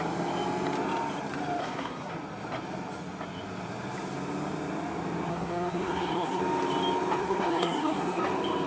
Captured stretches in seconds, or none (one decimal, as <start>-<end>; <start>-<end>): 0.0-1.6; 2.1-5.3; 6.4-7.2; 8.2-8.7